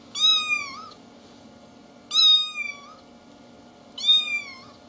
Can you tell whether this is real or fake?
real